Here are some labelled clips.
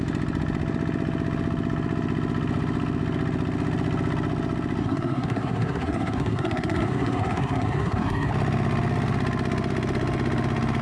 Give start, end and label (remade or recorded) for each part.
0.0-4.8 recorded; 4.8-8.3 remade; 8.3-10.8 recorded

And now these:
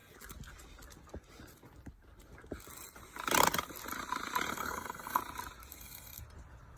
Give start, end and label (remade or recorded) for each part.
0.0-4.5 recorded; 4.5-5.2 remade; 5.2-5.7 recorded; 5.7-6.2 remade; 6.2-6.8 recorded

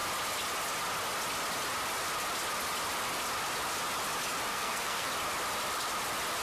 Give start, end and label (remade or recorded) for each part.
0.0-4.5 recorded; 4.5-5.1 remade; 5.1-6.4 recorded

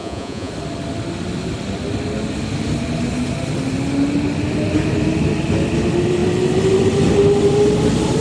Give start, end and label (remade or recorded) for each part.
0.0-0.5 remade; 0.5-8.2 recorded

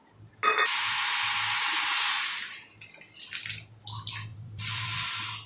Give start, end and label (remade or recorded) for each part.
0.0-4.3 recorded; 4.3-5.5 remade